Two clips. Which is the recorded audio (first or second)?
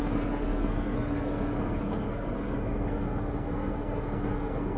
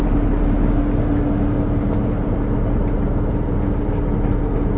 second